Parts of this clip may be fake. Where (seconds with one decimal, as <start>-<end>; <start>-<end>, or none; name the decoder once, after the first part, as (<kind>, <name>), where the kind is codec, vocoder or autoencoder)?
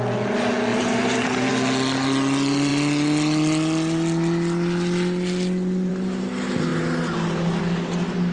none